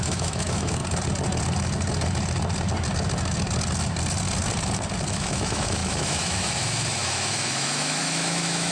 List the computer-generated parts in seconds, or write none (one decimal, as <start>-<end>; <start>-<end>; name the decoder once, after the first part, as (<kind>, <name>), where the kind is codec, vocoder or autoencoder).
0.0-0.8 (autoencoder, DAC-VAE); 5.1-8.7